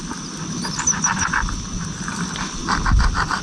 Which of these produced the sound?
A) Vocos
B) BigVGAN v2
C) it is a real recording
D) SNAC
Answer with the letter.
C